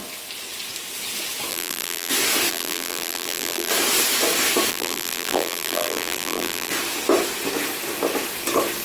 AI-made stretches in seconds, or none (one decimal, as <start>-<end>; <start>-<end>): 1.5-2.1; 2.5-3.7; 4.7-6.7